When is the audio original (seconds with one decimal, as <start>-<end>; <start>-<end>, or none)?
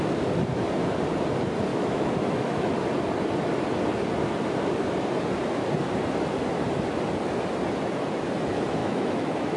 0.0-1.7; 2.7-8.8